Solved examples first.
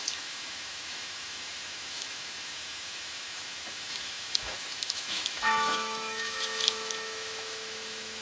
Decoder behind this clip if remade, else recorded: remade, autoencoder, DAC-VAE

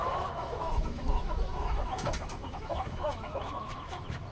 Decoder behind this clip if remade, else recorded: remade, autoencoder, DAC-VAE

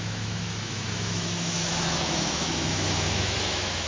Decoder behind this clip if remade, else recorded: remade, autoencoder, DAC-VAE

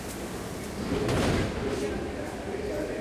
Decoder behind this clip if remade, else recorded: recorded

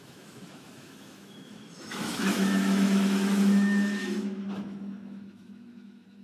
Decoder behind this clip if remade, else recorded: remade, autoencoder, DAC-VAE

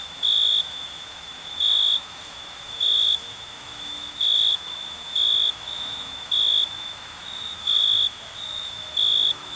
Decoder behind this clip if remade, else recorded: remade, autoencoder, DAC-VAE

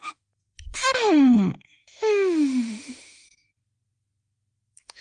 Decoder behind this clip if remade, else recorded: remade, autoencoder, DAC-VAE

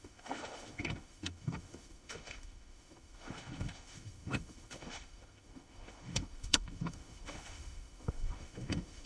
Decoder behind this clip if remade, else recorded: remade, autoencoder, DAC-VAE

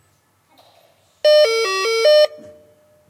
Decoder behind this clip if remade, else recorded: recorded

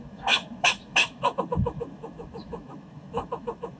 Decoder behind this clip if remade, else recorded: remade, autoencoder, DAC-VAE